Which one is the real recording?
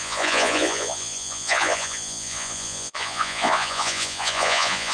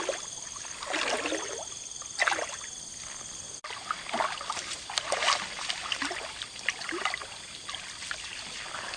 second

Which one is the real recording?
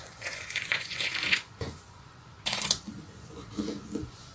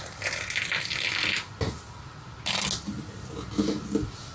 second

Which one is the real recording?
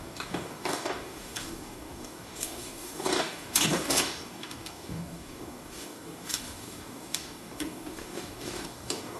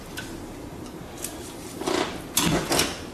second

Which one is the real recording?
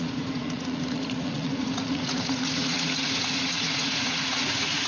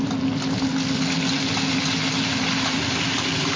second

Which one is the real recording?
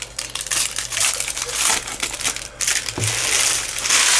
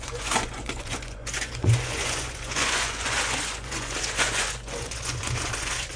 first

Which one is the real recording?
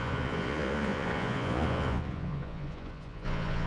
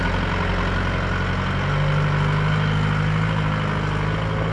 second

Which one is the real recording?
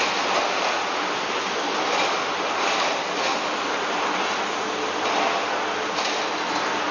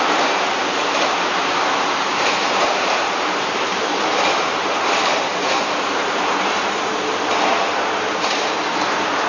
first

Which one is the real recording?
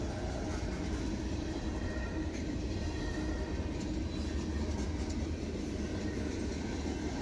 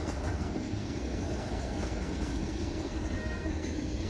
first